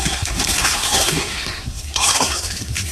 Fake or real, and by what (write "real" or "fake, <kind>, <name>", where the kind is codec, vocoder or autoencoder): fake, codec, SNAC